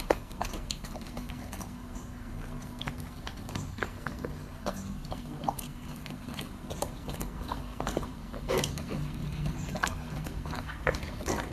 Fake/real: fake